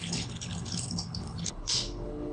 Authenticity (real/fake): fake